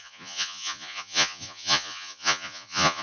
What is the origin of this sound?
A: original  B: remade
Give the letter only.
B